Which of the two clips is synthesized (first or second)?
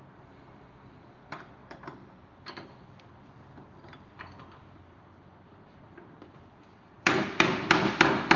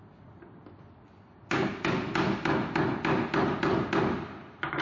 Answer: first